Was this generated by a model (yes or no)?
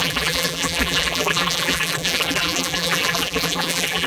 yes